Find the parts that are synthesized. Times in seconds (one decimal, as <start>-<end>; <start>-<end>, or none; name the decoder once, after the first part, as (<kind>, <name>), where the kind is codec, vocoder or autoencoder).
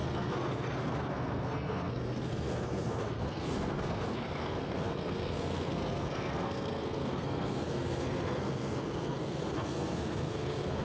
0.0-10.8 (codec, SNAC)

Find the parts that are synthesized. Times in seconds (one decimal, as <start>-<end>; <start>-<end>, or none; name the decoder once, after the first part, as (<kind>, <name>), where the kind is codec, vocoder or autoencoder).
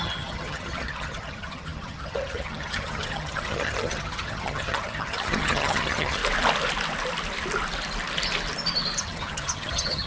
0.0-6.2 (vocoder, HiFi-GAN); 9.0-10.1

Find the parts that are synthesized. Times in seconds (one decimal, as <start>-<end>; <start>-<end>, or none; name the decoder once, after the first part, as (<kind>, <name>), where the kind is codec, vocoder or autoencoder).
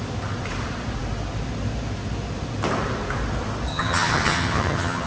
3.7-5.1 (vocoder, HiFi-GAN)